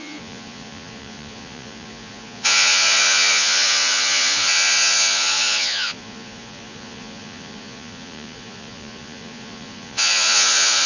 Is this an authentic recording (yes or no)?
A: no